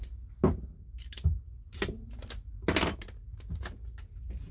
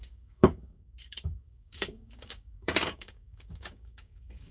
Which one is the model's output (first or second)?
second